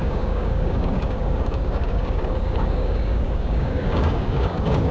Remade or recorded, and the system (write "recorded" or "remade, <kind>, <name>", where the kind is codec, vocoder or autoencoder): remade, codec, DAC